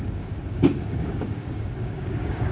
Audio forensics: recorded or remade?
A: remade